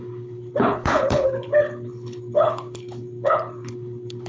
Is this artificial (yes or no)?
yes